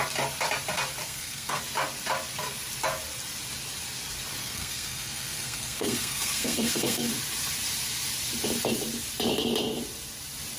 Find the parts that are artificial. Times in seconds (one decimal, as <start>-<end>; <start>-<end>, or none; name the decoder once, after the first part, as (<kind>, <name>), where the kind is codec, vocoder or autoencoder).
1.0-1.6 (codec, SNAC); 4.4-7.1